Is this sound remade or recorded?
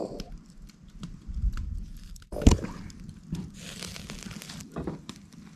remade